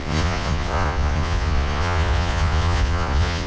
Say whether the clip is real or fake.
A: fake